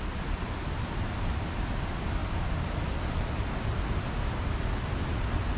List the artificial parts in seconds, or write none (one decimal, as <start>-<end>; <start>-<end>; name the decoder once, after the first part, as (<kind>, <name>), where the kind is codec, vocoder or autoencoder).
none